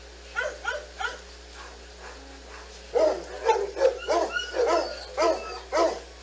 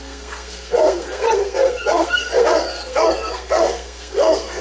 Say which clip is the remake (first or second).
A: second